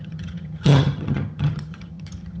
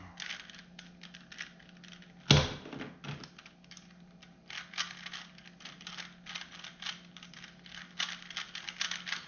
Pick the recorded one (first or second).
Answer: second